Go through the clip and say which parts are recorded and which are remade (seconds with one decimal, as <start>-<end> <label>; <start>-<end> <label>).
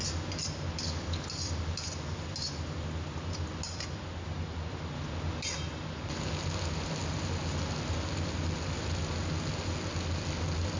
0.0-10.8 recorded